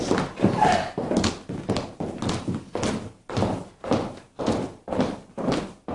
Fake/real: real